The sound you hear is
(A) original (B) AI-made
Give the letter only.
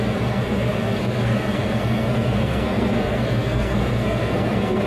B